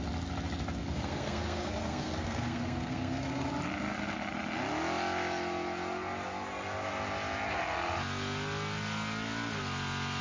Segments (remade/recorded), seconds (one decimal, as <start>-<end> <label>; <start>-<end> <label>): 0.0-0.8 recorded; 0.8-3.5 remade; 3.5-10.2 recorded

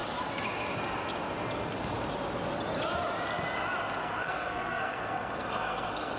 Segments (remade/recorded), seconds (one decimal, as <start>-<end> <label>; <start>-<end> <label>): 0.0-4.0 recorded; 4.0-6.2 remade

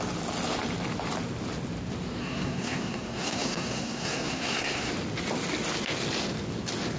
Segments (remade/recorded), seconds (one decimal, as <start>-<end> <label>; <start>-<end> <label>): 0.0-2.2 recorded; 2.2-4.9 remade; 4.9-7.0 recorded

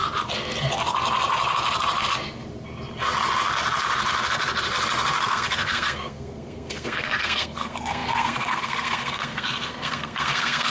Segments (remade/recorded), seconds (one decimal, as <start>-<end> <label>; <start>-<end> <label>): 0.0-5.2 recorded; 5.2-10.7 remade

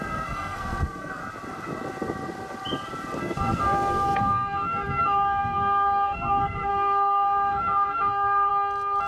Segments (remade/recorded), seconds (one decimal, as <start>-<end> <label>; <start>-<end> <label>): 0.0-1.2 remade; 1.2-3.2 recorded; 3.2-8.5 remade; 8.5-9.1 recorded

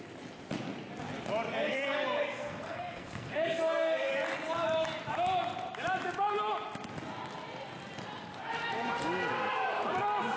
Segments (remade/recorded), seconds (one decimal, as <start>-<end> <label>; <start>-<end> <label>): 0.0-1.7 recorded; 1.7-4.1 remade; 4.1-10.4 recorded

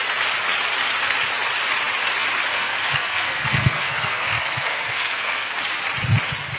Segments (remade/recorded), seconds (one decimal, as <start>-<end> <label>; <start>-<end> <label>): 0.0-2.5 recorded; 2.5-5.6 remade; 5.6-6.6 recorded